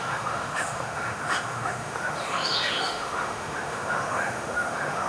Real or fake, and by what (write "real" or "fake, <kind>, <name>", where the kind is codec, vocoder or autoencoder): fake, autoencoder, DAC-VAE